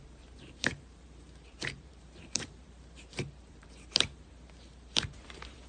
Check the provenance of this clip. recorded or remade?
remade